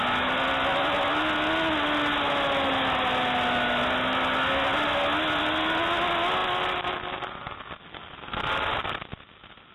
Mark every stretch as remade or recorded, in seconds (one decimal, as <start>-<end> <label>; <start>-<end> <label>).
0.0-9.7 recorded